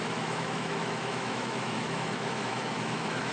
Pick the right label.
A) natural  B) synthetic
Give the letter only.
B